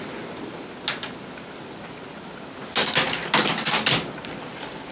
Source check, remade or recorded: recorded